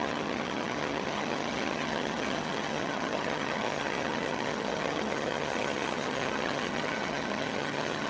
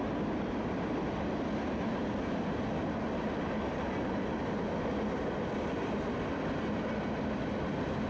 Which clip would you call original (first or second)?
second